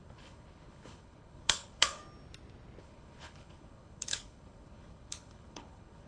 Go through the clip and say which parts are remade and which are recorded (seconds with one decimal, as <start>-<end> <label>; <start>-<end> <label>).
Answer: 0.0-2.0 remade; 2.0-2.8 recorded; 2.8-6.1 remade

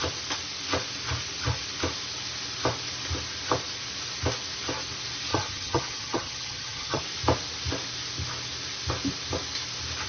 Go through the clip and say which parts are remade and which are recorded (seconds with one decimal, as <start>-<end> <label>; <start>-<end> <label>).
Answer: 0.0-5.3 recorded; 5.3-7.0 remade; 7.0-10.1 recorded